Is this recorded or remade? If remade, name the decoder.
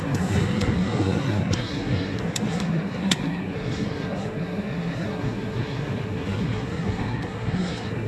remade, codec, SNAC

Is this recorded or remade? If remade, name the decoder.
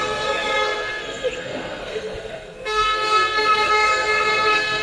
remade, codec, SNAC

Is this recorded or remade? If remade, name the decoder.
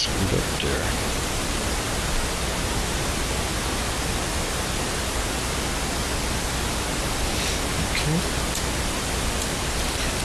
recorded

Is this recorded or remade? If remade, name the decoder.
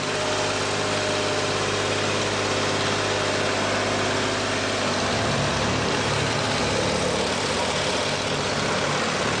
recorded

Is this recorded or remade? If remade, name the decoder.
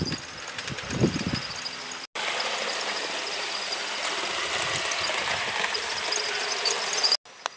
recorded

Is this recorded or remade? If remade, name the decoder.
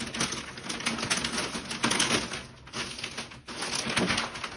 recorded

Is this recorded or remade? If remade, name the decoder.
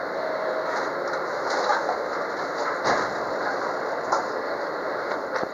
recorded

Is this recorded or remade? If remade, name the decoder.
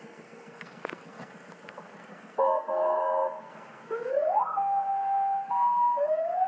remade, codec, SNAC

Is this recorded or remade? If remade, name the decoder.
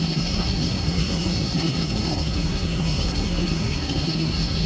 remade, codec, SNAC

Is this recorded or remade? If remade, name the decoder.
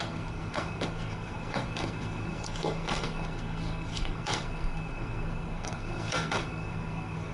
remade, codec, SNAC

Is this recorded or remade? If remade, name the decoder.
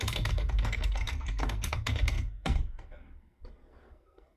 remade, codec, SNAC